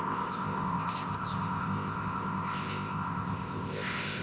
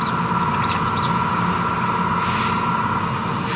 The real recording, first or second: second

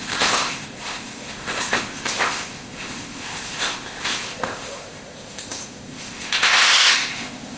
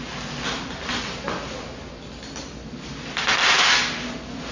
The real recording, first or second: second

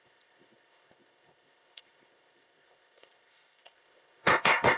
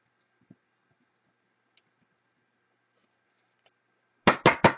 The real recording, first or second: second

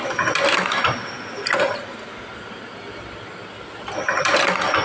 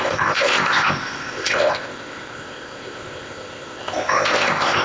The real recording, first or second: first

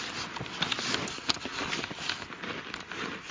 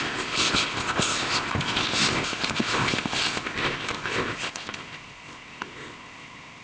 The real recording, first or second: first